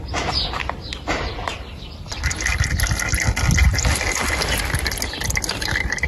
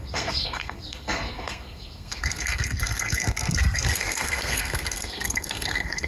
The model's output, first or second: second